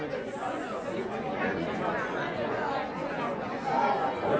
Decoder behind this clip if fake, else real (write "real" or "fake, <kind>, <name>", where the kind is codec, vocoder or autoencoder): fake, vocoder, Vocos